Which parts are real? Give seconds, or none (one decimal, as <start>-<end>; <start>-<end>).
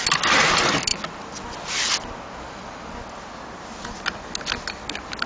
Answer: 0.0-5.3